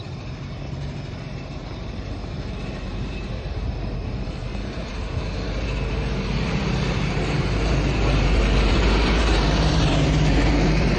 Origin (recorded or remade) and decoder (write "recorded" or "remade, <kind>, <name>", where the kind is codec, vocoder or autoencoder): remade, vocoder, BigVGAN v2